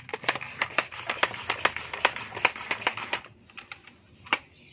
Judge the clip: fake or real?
fake